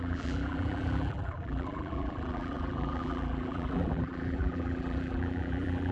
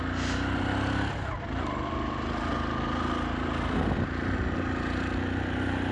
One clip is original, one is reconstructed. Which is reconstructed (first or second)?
first